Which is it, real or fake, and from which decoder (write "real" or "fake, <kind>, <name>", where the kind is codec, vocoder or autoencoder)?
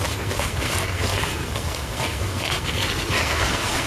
fake, codec, SNAC